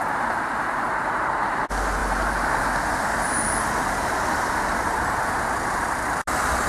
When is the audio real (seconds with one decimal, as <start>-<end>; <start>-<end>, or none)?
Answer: 1.6-2.0; 2.6-3.8; 4.5-6.7